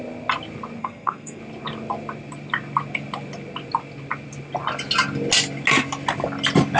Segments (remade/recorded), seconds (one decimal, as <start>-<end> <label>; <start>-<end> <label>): 0.0-0.8 recorded; 0.8-1.4 remade; 1.4-6.8 recorded